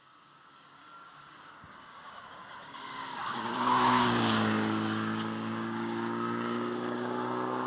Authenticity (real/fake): fake